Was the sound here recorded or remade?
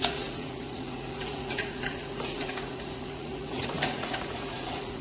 remade